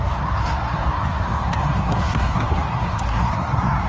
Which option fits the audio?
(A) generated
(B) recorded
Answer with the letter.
A